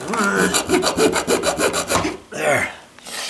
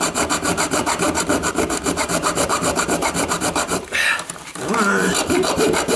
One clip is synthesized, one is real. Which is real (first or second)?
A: first